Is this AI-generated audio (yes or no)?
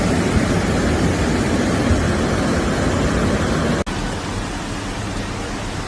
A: no